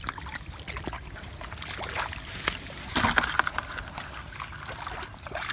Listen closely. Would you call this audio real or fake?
real